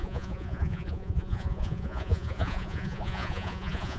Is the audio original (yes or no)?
no